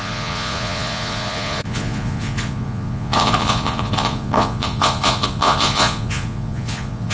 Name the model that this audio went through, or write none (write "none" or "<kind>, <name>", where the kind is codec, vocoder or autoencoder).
vocoder, Vocos